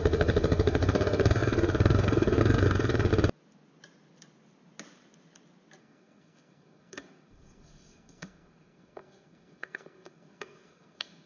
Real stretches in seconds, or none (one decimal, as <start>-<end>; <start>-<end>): 3.1-5.8